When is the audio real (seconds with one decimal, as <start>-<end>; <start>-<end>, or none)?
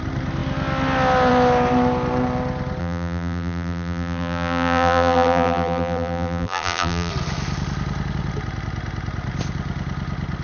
0.0-2.8; 7.1-10.4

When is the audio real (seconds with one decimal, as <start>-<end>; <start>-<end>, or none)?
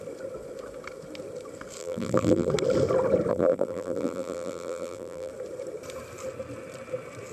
0.0-1.8; 2.5-3.3; 5.3-7.3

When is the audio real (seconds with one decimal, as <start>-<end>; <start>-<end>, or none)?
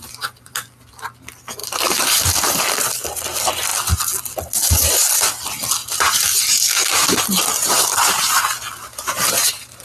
0.0-1.6; 2.6-5.8; 8.4-8.8